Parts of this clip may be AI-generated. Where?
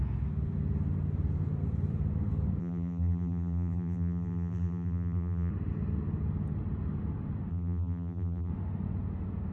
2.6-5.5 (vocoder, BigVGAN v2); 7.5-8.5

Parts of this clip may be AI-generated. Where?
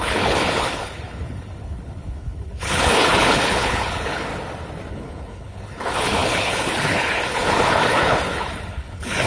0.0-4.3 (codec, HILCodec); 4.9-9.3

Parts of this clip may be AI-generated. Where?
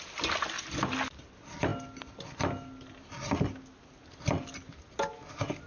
none